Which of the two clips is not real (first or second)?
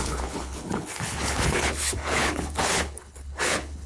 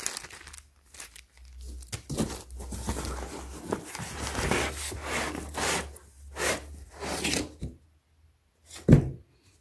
first